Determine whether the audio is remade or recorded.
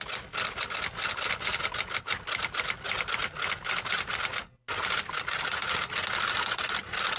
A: recorded